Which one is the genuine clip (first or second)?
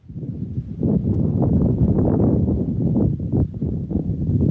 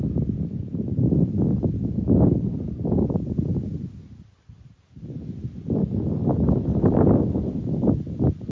second